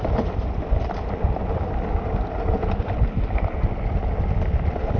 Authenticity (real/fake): real